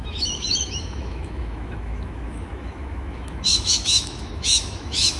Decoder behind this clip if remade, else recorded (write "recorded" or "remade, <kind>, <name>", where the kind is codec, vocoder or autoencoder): remade, autoencoder, DAC-VAE